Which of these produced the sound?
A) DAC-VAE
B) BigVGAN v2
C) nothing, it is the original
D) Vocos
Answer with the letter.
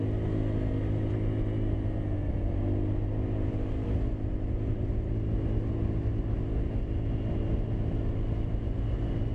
C